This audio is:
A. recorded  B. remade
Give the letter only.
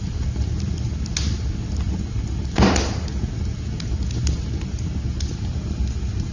A